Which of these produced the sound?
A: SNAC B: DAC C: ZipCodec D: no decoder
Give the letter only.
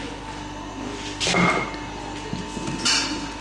D